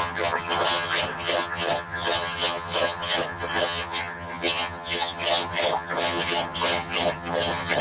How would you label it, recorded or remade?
remade